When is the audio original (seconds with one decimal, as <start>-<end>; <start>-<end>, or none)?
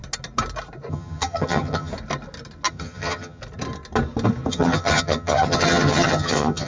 0.0-0.9; 1.9-2.7; 3.4-4.5